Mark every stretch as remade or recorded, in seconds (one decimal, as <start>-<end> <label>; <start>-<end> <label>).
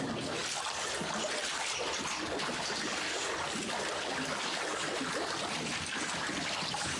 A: 0.0-7.0 recorded